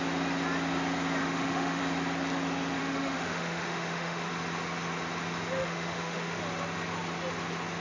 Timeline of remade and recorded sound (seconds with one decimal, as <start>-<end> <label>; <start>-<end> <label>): 0.0-1.2 recorded; 1.2-1.8 remade; 1.8-2.8 recorded; 2.8-4.3 remade; 4.3-5.6 recorded; 5.6-6.4 remade; 6.4-7.8 recorded